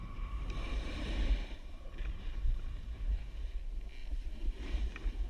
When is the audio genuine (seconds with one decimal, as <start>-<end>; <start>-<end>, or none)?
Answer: 3.2-4.0